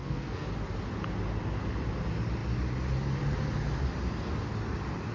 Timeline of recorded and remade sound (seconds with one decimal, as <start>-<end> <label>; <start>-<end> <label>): 0.0-0.5 remade; 0.5-5.1 recorded